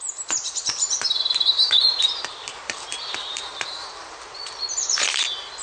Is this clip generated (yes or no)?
yes